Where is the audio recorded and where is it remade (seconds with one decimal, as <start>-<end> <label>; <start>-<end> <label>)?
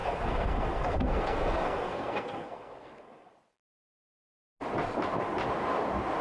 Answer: 0.0-3.3 remade; 3.3-6.2 recorded